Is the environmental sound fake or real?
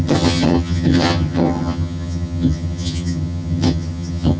fake